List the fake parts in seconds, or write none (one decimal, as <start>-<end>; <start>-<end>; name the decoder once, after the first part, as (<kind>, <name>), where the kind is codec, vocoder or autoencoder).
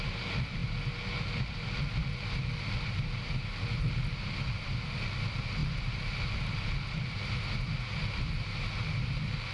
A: none